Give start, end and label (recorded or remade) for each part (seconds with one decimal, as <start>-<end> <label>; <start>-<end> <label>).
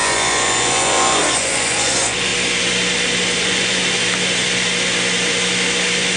0.0-2.3 remade; 2.3-3.4 recorded; 3.4-3.8 remade; 3.8-6.2 recorded